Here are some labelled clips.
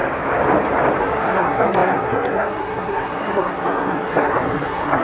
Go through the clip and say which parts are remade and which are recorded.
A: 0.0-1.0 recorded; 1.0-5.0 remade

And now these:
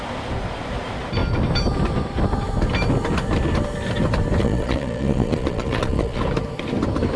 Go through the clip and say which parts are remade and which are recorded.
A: 0.0-4.4 recorded; 4.4-6.2 remade; 6.2-7.2 recorded

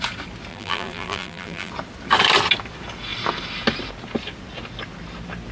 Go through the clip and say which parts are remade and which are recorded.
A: 0.0-0.5 recorded; 0.5-1.7 remade; 1.7-5.5 recorded

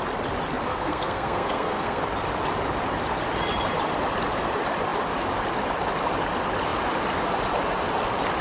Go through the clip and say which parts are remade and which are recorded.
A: 0.0-0.7 recorded; 0.7-2.0 remade; 2.0-8.4 recorded

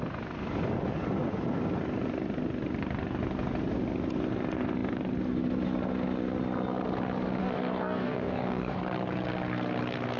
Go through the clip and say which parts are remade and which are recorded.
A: 0.0-7.4 recorded; 7.4-8.8 remade; 8.8-10.2 recorded

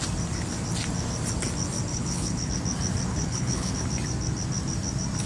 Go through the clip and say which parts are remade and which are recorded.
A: 0.0-1.9 recorded; 1.9-2.5 remade; 2.5-3.1 recorded; 3.1-3.7 remade; 3.7-5.3 recorded